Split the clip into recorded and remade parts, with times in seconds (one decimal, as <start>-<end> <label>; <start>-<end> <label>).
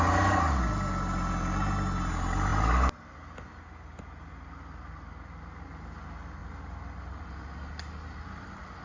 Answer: 0.0-8.8 recorded